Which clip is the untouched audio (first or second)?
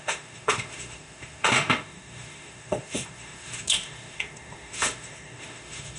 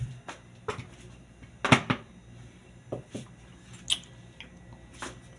second